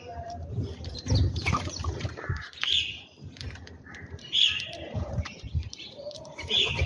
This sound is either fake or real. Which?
fake